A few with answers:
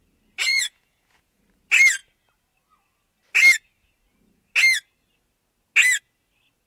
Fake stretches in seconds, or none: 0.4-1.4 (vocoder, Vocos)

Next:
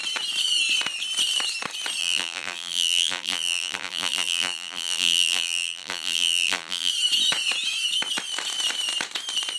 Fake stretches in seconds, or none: 2.0-6.9 (vocoder, BigVGAN v2)

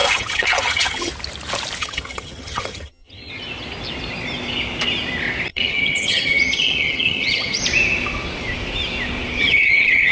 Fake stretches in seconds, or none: 0.0-1.1 (vocoder, HiFi-GAN); 1.8-3.3; 5.5-7.6; 9.4-10.1

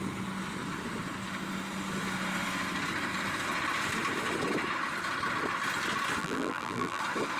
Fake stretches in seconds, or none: 6.2-7.0 (vocoder, BigVGAN v2)

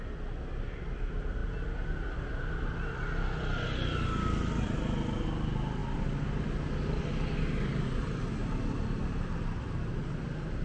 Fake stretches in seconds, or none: none